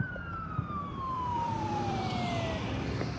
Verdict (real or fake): fake